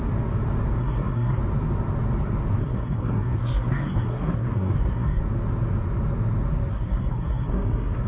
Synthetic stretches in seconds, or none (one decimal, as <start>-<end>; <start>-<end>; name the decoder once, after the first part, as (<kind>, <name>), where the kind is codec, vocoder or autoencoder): 0.8-1.4 (codec, SNAC); 2.6-5.2; 6.7-8.1